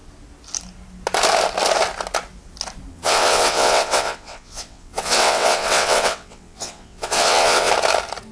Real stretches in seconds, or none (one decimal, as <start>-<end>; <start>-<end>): 0.0-2.9; 7.7-8.3